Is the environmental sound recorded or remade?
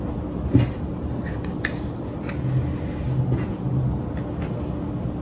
recorded